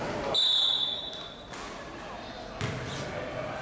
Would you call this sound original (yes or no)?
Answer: yes